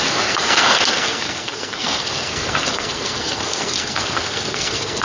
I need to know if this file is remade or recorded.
remade